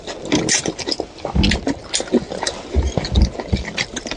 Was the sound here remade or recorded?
recorded